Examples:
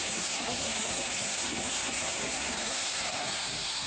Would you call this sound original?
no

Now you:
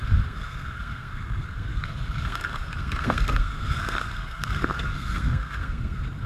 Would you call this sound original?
no